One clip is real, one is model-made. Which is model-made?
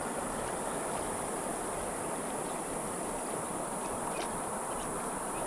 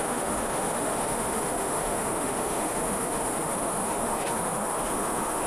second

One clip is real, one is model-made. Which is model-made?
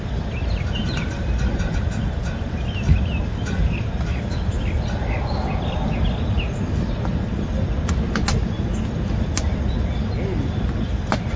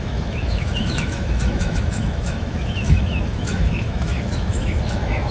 second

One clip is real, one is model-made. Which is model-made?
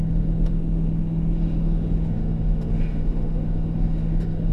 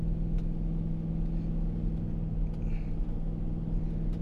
first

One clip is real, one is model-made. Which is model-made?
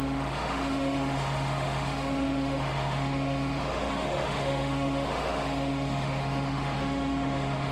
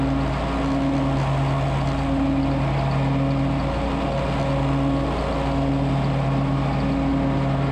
first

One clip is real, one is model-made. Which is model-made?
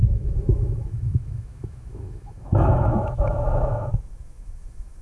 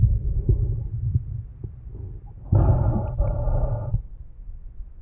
first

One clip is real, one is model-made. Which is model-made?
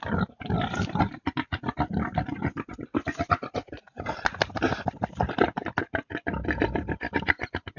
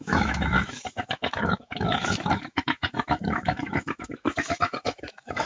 second